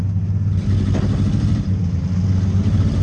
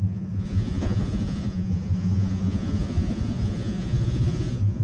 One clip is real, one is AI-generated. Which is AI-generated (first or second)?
second